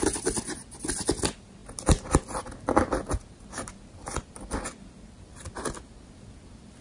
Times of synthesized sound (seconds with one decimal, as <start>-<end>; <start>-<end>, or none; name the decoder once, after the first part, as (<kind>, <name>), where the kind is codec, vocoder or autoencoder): none